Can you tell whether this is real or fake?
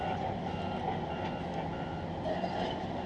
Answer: real